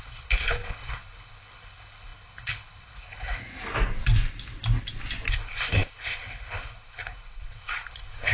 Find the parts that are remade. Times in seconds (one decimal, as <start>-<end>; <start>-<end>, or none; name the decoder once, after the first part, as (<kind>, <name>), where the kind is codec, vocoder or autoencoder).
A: 0.0-3.4 (codec, HILCodec); 5.3-8.3